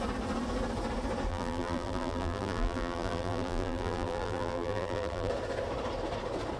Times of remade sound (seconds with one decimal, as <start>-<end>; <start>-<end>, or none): 1.3-5.3